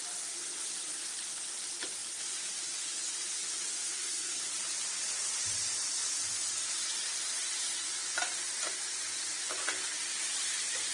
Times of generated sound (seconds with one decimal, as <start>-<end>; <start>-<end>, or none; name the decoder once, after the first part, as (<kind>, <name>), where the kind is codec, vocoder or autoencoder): 3.7-4.4 (codec, SNAC)